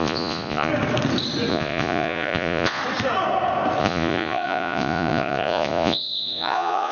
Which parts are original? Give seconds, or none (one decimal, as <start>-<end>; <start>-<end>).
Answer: 0.7-1.5; 2.8-3.8